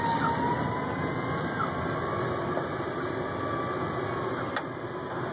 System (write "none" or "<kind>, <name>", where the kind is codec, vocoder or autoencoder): none